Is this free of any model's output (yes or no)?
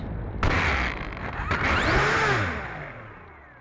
yes